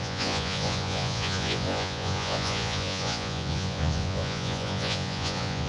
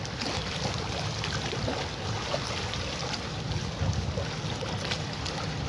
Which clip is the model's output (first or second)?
first